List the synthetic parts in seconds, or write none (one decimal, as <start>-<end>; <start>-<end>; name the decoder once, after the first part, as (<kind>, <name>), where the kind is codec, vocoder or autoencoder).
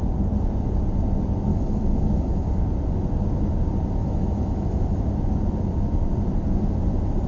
1.5-2.6 (autoencoder, DAC-VAE); 4.0-5.0